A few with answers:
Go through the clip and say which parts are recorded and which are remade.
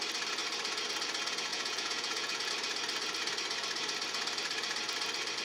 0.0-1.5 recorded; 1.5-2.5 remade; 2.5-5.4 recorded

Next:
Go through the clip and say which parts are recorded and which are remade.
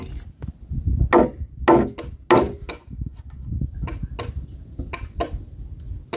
0.0-6.2 recorded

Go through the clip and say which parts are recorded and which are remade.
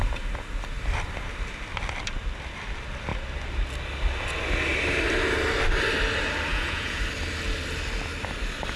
0.0-6.5 recorded; 6.5-7.0 remade; 7.0-8.8 recorded